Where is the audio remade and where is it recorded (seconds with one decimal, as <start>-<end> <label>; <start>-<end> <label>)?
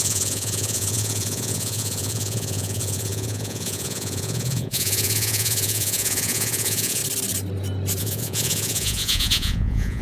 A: 0.0-7.0 remade; 7.0-8.0 recorded; 8.0-10.0 remade